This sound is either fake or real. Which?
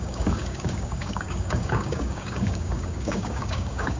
fake